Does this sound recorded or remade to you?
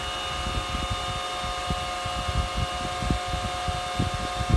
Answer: recorded